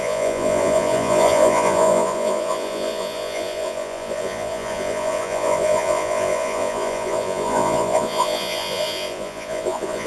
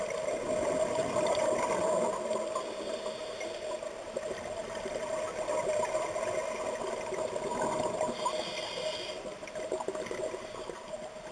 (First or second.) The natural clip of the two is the second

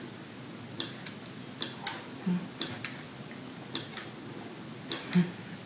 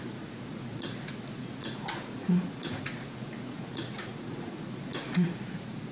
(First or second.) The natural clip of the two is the first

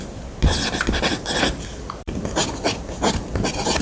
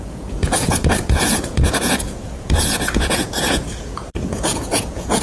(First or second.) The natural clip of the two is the first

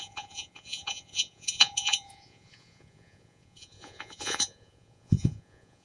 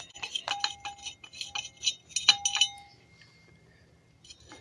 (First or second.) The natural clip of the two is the second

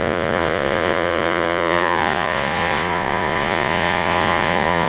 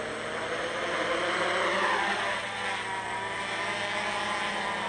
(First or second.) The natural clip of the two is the second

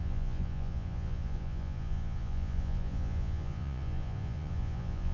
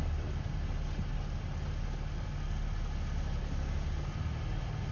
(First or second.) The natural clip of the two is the second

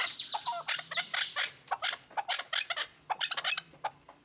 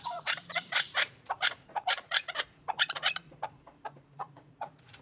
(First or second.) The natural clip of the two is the first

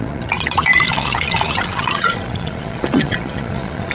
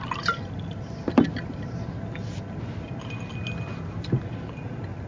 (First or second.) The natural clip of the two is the second